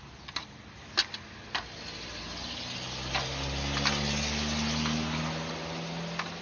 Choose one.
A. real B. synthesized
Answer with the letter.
A